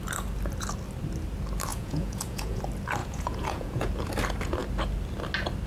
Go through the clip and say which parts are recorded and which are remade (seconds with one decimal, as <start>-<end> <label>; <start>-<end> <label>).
0.0-1.7 recorded; 1.7-2.6 remade; 2.6-3.0 recorded; 3.0-3.9 remade; 3.9-5.7 recorded